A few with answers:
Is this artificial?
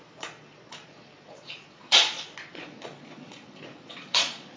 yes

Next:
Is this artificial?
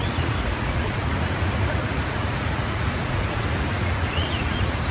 yes